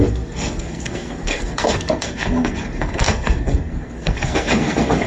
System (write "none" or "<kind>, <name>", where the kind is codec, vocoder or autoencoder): codec, SNAC